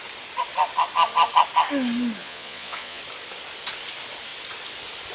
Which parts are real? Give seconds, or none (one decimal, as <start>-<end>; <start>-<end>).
0.0-2.2; 3.0-5.1